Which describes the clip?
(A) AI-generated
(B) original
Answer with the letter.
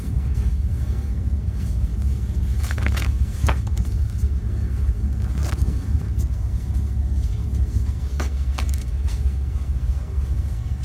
A